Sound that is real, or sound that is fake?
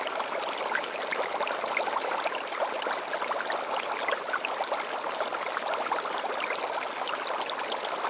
real